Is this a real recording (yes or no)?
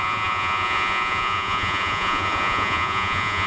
no